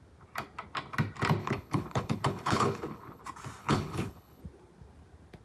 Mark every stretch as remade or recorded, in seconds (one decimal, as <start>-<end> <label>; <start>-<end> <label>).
0.0-1.4 recorded; 1.4-3.2 remade; 3.2-3.6 recorded; 3.6-4.4 remade; 4.4-5.4 recorded